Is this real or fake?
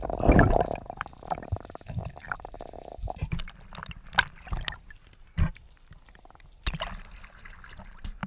real